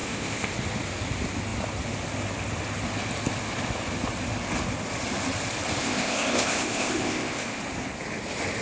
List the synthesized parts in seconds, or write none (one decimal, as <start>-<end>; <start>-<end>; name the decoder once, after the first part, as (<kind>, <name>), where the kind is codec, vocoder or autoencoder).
0.0-0.5 (codec, ZipCodec); 5.8-7.6